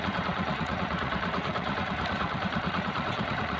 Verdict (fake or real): fake